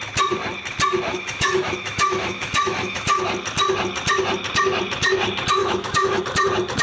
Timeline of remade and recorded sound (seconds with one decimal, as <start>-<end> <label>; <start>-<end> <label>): 0.0-1.1 recorded; 1.1-3.2 remade; 3.2-5.6 recorded; 5.6-6.2 remade; 6.2-6.8 recorded